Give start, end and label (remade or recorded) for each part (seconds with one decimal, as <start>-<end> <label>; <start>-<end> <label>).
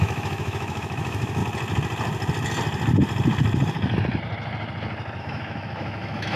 0.0-1.4 remade; 1.4-5.2 recorded; 5.2-6.4 remade